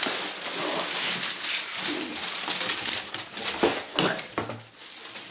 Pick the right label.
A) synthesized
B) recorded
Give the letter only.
B